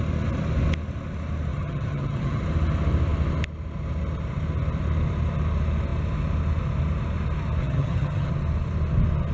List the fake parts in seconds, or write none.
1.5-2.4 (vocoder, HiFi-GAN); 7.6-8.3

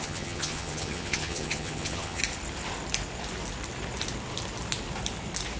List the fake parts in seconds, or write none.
0.0-2.2 (vocoder, HiFi-GAN)

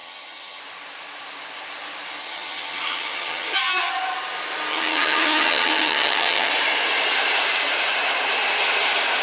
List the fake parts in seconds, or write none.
0.0-0.6 (vocoder, HiFi-GAN); 2.2-3.9; 4.7-6.5

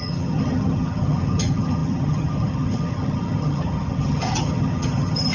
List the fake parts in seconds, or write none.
0.0-5.3 (vocoder, HiFi-GAN)

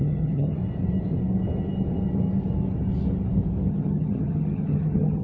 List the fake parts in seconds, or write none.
0.0-0.6 (vocoder, HiFi-GAN); 3.7-5.2

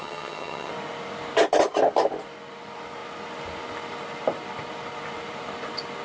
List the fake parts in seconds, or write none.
0.0-0.7 (vocoder, HiFi-GAN)

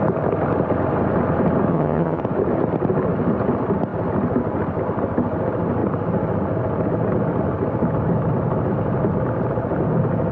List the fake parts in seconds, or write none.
1.7-2.2 (vocoder, HiFi-GAN)